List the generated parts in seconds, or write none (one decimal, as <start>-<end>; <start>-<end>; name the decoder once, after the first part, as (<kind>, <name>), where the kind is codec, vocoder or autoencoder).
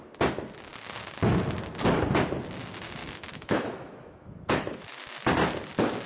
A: 3.0-4.9 (autoencoder, DAC-VAE)